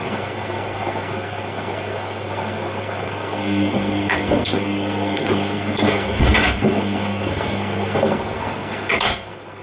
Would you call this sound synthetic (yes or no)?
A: yes